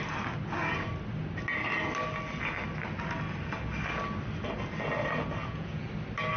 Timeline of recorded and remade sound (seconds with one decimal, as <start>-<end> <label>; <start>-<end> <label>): 0.0-5.4 recorded; 5.4-5.9 remade; 5.9-6.4 recorded